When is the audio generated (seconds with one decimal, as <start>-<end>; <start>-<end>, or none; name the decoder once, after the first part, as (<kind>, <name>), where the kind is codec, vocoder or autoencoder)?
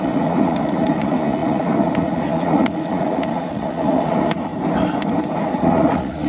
0.0-4.5 (vocoder, Vocos); 5.5-6.3